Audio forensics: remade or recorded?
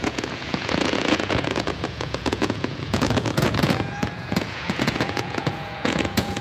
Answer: remade